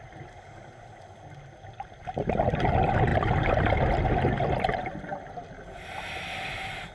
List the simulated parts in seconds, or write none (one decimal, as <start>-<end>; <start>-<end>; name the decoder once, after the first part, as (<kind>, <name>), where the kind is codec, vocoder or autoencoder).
none